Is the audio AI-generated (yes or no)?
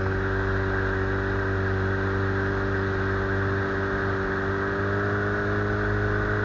no